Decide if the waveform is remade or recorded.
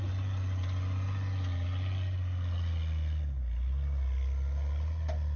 recorded